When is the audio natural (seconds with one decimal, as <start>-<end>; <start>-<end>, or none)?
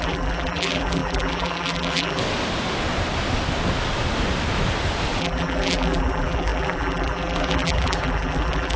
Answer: 2.2-5.2